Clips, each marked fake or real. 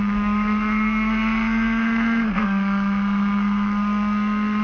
fake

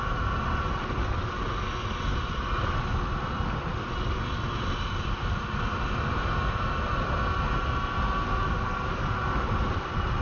real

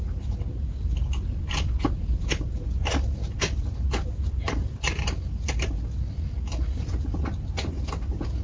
real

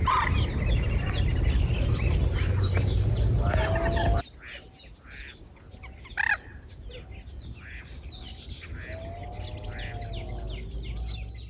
real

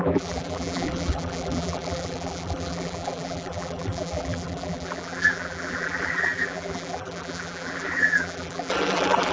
fake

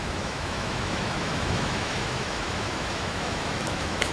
fake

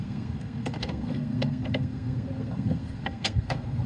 fake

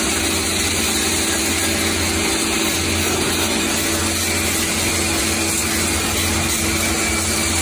real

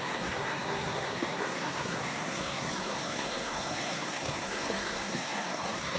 fake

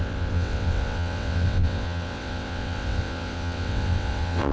fake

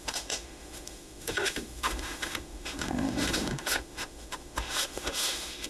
fake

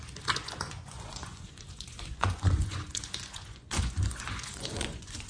fake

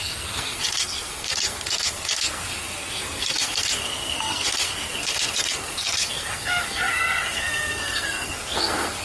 fake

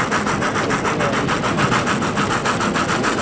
real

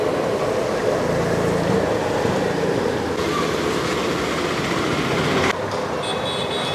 real